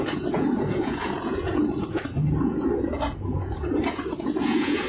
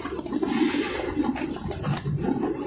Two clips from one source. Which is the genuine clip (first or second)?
second